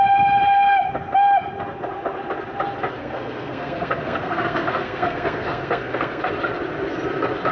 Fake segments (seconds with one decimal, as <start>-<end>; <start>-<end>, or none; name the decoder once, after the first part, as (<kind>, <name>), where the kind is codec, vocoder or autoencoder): 3.0-6.3 (codec, SNAC)

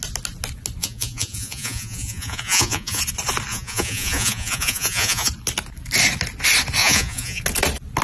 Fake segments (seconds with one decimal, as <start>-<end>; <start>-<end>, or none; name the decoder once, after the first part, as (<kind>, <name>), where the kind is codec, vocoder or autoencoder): 0.8-3.0 (vocoder, Vocos); 3.5-5.3; 6.8-7.4

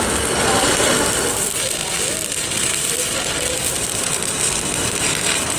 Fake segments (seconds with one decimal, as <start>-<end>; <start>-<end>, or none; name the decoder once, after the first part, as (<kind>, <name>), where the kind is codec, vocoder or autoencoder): 1.8-5.6 (vocoder, BigVGAN v2)

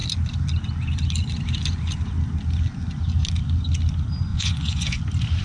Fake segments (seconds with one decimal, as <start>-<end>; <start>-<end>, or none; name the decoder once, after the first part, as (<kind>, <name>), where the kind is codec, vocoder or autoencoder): 4.3-5.0 (vocoder, Vocos)

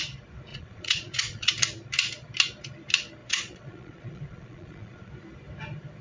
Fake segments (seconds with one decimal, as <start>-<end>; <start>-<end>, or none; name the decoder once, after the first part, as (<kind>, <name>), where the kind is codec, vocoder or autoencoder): 0.5-1.5 (vocoder, Vocos); 3.2-5.1

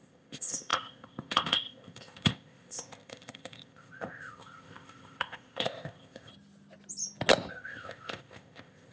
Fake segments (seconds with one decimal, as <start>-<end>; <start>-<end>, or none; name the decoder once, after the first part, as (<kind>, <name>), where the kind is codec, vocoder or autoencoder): 0.0-6.3 (codec, ZipCodec); 7.5-8.9

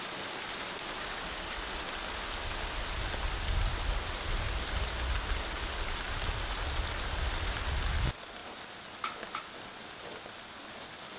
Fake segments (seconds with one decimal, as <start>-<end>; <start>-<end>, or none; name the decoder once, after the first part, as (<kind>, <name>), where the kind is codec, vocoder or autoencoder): none

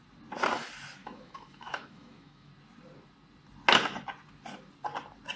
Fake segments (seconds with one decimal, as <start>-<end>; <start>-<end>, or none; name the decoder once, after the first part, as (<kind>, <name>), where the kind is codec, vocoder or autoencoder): 1.0-2.5 (autoencoder, DAC-VAE)